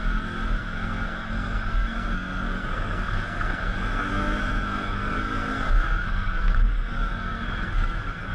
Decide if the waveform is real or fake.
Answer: fake